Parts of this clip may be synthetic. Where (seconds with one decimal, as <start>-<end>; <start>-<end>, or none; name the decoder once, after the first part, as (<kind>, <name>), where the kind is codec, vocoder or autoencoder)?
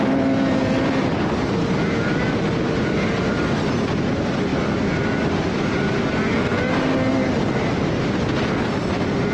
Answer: none